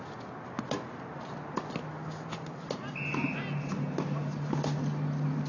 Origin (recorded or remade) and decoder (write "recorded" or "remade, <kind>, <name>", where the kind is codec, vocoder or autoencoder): recorded